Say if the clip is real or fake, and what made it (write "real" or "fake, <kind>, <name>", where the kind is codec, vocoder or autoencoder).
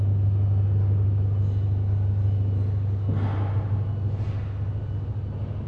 real